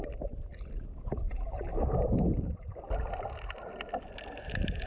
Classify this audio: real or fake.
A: real